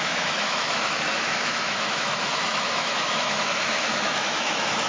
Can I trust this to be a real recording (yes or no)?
no